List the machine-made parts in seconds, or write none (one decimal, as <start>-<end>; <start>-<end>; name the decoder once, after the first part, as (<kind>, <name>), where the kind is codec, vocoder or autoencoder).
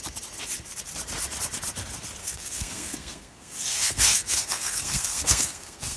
2.2-6.0 (codec, SNAC)